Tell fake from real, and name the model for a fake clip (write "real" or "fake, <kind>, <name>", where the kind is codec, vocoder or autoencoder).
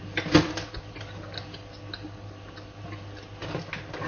real